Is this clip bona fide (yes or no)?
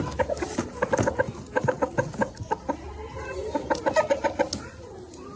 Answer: yes